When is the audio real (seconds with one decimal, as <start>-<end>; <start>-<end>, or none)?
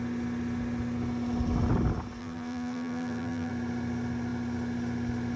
0.0-2.2; 3.5-5.4